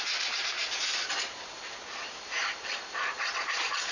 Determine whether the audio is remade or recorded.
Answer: recorded